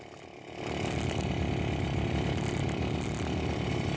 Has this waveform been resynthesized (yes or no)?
no